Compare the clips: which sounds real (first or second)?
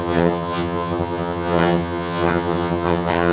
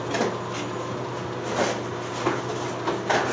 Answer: second